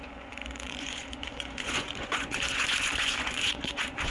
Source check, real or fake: fake